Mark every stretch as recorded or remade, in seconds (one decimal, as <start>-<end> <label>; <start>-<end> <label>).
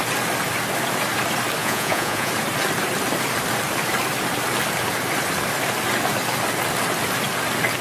0.0-1.6 recorded; 1.6-2.3 remade; 2.3-7.8 recorded